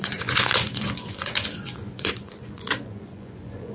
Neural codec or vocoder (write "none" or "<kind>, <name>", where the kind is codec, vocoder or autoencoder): vocoder, Vocos